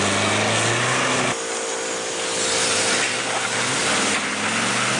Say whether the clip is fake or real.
real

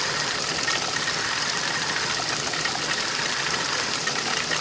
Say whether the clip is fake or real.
real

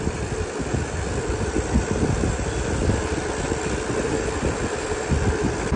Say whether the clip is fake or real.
real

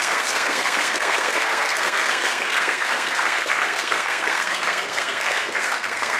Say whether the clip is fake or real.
fake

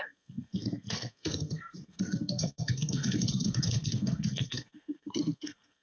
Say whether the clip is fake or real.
fake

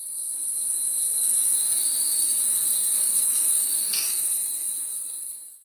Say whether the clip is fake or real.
fake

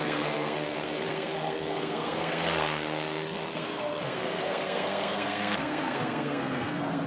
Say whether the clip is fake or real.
fake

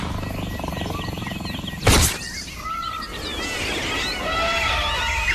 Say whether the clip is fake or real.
real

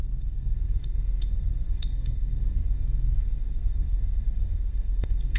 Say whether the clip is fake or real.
fake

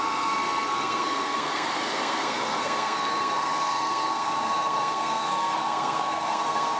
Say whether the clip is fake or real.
fake